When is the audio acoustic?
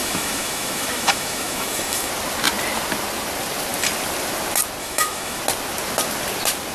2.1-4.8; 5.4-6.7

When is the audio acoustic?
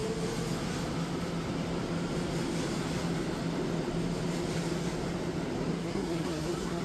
0.0-5.7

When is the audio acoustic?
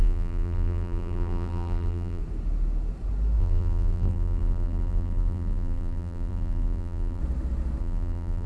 2.2-3.4; 7.2-7.8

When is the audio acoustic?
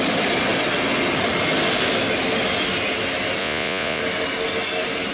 0.0-3.4; 4.0-5.1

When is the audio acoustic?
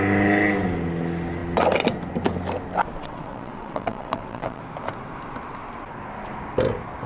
0.0-3.0; 4.6-7.1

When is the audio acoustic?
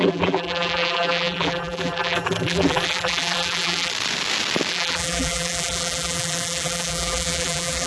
3.9-4.7